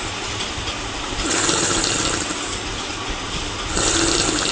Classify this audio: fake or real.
real